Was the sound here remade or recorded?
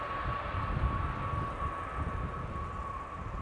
recorded